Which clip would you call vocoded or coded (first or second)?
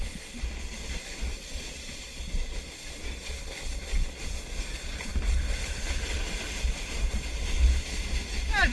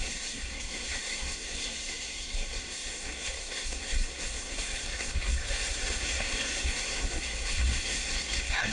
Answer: second